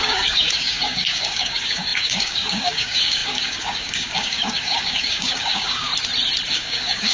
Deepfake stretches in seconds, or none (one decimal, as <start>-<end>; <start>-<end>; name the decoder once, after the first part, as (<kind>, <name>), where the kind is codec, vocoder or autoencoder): 0.0-5.9 (codec, DAC); 6.5-7.1